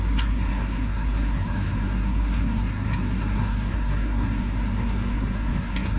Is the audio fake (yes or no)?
yes